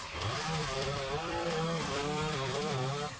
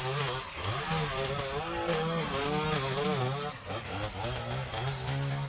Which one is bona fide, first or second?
second